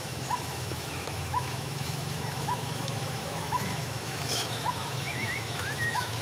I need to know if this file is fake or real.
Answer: fake